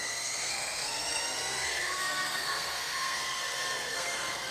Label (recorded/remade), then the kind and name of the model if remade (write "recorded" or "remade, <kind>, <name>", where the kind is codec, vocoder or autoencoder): remade, codec, SNAC